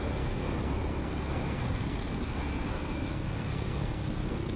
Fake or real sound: fake